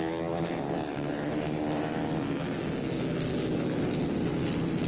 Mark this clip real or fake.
real